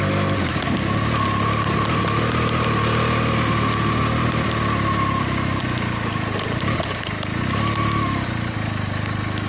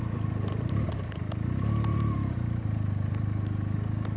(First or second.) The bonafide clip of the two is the first